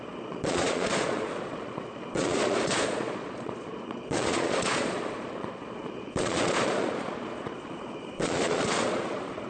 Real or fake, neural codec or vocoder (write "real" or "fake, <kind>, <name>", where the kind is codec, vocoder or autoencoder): fake, vocoder, Vocos